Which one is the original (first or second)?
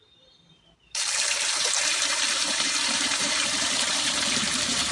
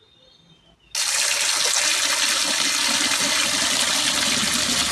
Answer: second